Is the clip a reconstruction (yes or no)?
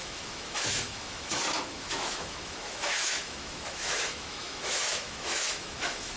yes